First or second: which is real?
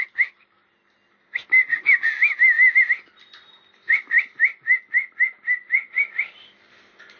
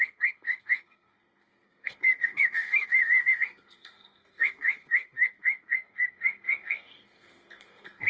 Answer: first